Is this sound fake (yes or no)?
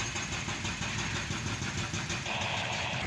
no